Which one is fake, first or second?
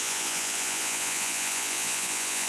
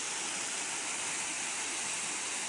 first